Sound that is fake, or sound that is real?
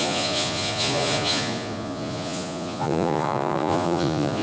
fake